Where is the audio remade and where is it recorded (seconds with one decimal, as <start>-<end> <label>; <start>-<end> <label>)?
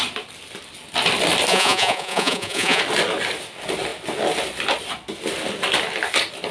0.0-1.5 recorded; 1.5-2.8 remade; 2.8-6.5 recorded